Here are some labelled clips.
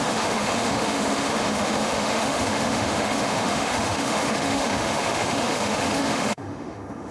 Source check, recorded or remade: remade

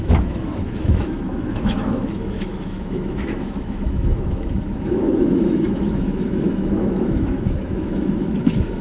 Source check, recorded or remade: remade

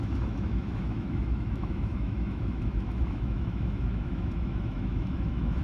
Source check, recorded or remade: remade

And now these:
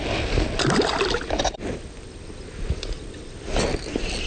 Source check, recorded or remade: recorded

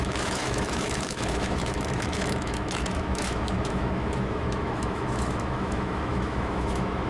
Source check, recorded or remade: remade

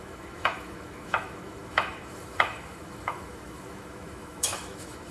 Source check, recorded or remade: remade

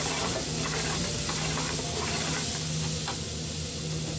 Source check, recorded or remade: recorded